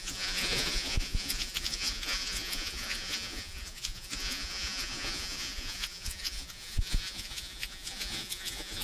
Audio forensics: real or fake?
fake